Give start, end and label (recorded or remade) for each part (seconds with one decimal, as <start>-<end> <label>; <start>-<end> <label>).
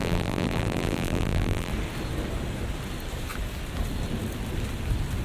0.0-1.7 remade; 1.7-5.2 recorded